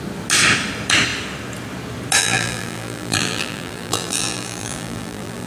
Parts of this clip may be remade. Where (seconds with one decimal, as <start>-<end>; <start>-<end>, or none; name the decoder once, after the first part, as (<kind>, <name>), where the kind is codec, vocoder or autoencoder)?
2.2-5.5 (vocoder, BigVGAN v2)